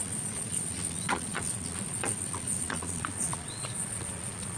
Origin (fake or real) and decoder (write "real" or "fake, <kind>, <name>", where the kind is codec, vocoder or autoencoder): fake, vocoder, Vocos